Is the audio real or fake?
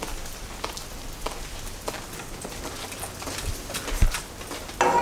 real